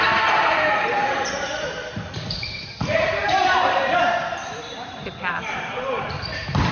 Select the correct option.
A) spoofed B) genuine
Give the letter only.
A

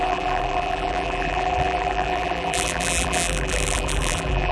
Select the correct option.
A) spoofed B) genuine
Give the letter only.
A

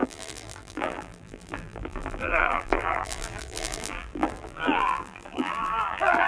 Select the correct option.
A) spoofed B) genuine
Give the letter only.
A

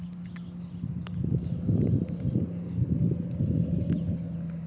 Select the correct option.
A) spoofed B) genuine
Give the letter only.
B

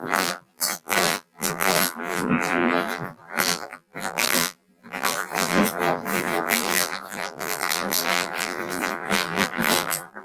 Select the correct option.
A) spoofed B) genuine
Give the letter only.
A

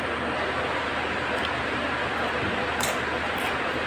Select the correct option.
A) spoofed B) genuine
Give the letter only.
B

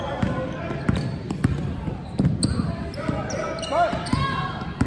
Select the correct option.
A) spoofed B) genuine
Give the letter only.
B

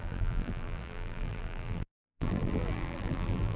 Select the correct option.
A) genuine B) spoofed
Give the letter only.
B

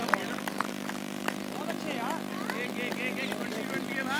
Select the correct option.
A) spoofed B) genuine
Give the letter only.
B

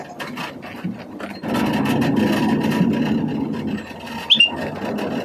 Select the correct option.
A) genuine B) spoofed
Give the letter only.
A